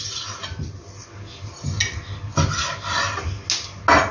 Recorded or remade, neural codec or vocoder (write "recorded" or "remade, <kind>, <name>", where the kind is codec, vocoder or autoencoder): recorded